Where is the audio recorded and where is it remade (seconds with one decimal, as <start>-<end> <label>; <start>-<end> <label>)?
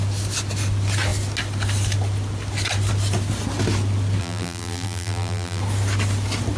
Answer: 0.0-4.2 recorded; 4.2-5.6 remade; 5.6-6.6 recorded